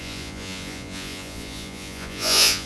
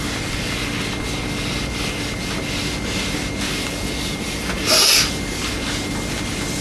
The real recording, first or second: second